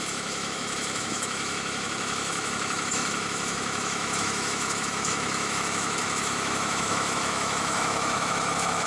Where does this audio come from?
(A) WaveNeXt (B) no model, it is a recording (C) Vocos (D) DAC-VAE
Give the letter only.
D